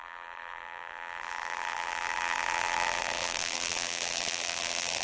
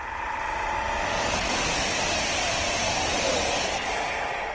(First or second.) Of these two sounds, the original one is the second